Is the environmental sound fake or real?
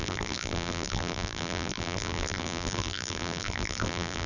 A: fake